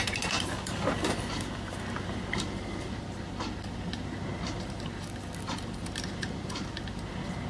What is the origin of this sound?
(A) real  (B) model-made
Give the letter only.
A